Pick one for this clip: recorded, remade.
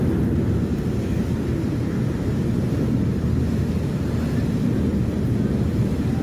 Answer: recorded